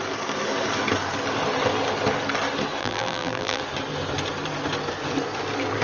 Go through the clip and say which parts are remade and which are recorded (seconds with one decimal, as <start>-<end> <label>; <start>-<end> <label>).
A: 0.0-2.8 recorded; 2.8-3.6 remade; 3.6-5.8 recorded

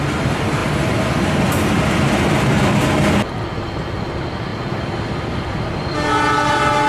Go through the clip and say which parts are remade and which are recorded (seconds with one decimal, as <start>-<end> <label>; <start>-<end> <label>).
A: 0.0-6.9 recorded

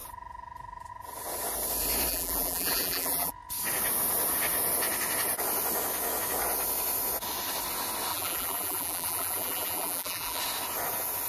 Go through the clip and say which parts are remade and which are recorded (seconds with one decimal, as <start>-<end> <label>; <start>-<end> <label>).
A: 0.0-2.1 recorded; 2.1-3.3 remade; 3.3-8.1 recorded; 8.1-10.4 remade; 10.4-11.3 recorded